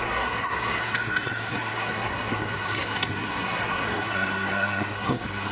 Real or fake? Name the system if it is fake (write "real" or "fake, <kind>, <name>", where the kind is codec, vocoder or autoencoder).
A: fake, codec, SNAC